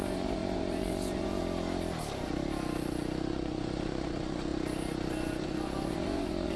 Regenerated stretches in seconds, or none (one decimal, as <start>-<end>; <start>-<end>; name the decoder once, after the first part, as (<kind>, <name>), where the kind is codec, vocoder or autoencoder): 0.0-1.4 (vocoder, Vocos); 3.3-4.5; 5.1-6.6